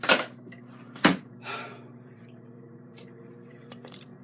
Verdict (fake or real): fake